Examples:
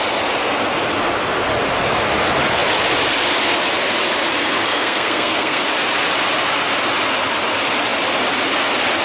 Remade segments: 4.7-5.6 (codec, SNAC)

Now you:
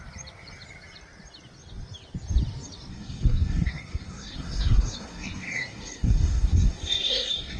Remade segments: 2.9-7.6 (codec, SNAC)

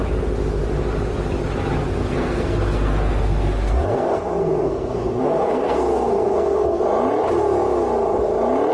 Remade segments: 2.0-6.8 (codec, SNAC)